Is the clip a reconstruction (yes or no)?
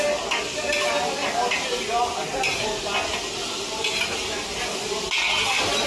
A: no